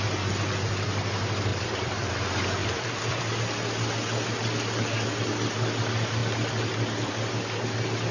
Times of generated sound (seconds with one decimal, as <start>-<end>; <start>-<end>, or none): 1.5-2.1; 2.6-3.2; 6.2-7.3